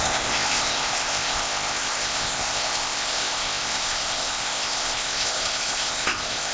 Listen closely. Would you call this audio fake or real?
fake